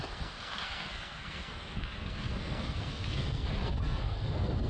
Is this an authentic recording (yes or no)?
no